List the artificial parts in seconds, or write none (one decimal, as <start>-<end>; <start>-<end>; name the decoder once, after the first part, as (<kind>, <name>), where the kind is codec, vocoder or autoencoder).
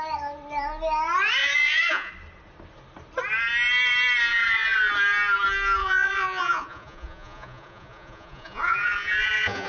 1.4-2.1 (vocoder, Vocos); 4.3-4.9; 5.8-9.7